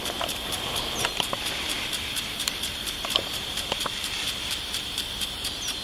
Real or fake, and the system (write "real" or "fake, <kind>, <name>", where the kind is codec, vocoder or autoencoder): fake, vocoder, BigVGAN v2